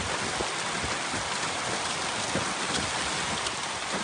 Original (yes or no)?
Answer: yes